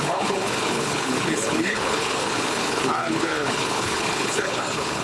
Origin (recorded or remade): remade